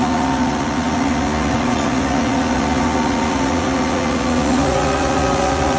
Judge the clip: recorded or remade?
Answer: remade